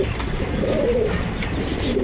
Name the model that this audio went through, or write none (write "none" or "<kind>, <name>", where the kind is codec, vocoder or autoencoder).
vocoder, BigVGAN v2